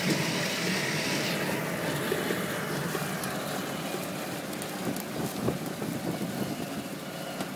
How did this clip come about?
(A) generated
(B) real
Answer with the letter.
B